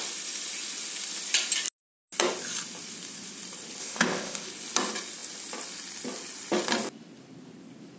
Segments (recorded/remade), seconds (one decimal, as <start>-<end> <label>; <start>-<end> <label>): 0.0-3.8 recorded; 3.8-4.5 remade; 4.5-8.0 recorded